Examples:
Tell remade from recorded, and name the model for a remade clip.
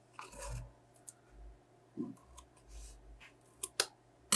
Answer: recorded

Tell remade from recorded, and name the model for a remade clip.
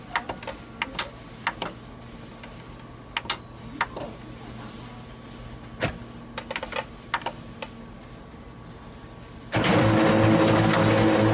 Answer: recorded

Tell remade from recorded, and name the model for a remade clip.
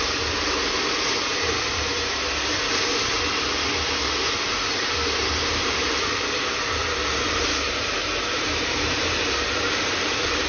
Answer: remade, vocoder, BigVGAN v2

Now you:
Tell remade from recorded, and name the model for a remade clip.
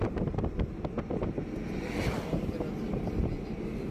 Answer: recorded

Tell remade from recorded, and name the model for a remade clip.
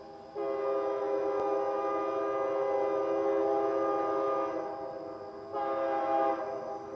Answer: recorded